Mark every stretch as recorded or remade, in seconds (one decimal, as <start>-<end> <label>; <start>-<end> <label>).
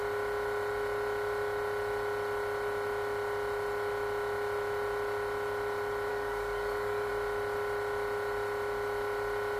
0.0-6.1 recorded; 6.1-7.1 remade; 7.1-9.6 recorded